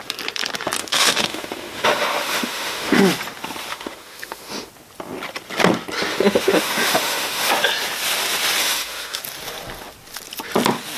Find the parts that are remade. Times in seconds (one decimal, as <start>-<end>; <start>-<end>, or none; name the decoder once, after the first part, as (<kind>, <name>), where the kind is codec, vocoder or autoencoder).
0.8-3.0 (autoencoder, DAC-VAE); 3.7-4.7; 6.1-7.5; 8.6-9.2